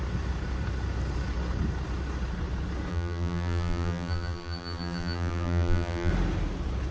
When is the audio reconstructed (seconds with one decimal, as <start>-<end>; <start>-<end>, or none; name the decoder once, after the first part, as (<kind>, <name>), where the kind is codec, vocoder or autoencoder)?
2.9-6.1 (vocoder, BigVGAN v2)